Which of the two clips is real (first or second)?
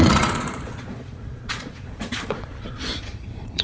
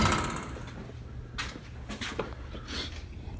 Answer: second